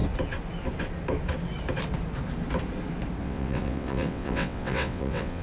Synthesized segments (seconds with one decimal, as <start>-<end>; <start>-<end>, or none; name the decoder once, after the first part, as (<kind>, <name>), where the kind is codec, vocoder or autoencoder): 3.2-5.4 (vocoder, WaveNeXt)